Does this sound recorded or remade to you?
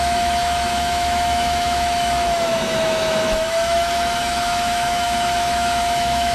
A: remade